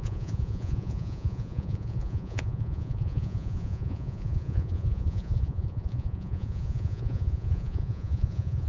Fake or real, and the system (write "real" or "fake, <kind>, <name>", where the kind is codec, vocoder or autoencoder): fake, vocoder, Vocos